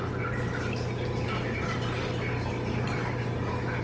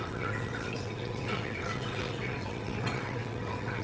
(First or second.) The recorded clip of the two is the first